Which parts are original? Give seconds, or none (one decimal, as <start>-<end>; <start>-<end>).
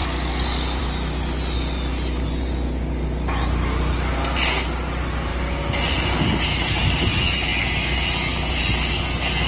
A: 0.0-9.5